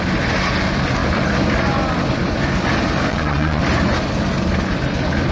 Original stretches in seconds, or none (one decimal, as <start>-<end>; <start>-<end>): 0.0-3.1; 3.6-5.3